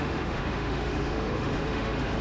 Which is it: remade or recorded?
remade